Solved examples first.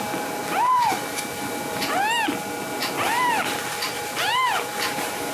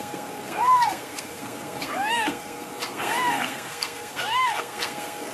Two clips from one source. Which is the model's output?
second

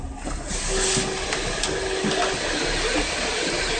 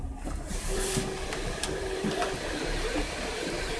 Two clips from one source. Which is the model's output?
second